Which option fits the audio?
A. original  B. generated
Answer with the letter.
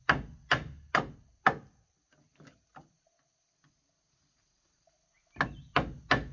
A